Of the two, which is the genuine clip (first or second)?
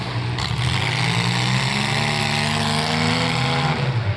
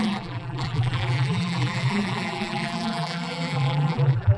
first